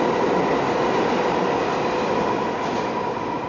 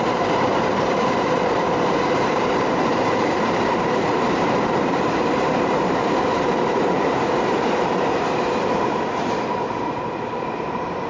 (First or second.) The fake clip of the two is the second